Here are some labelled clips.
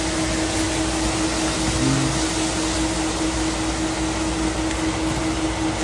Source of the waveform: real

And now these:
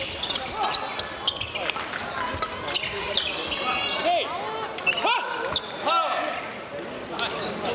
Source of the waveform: real